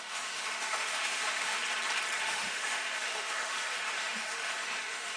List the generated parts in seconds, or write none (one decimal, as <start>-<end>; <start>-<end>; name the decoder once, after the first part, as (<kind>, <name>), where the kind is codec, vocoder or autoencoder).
0.0-1.6 (autoencoder, DAC-VAE); 2.2-5.2